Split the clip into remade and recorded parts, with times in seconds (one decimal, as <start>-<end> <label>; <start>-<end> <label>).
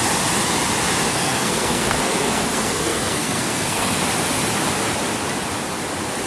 0.0-1.1 recorded; 1.1-4.0 remade; 4.0-6.3 recorded